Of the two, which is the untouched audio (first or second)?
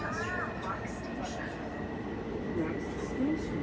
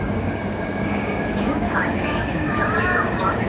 first